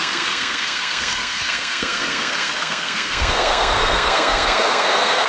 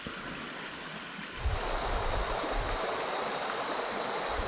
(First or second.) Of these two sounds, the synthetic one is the first